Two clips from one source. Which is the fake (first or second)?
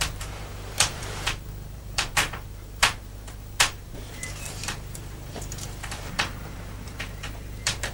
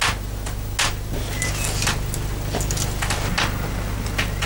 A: first